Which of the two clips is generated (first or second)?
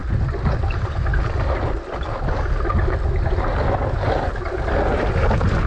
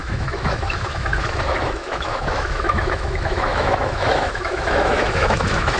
second